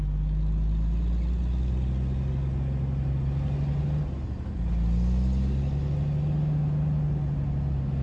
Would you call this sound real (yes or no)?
yes